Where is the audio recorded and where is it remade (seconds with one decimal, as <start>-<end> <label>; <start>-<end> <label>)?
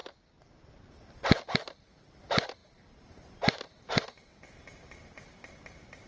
0.0-1.4 recorded; 1.4-6.1 remade